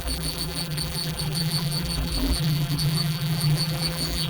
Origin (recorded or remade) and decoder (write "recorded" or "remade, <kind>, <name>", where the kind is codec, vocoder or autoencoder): remade, vocoder, BigVGAN v2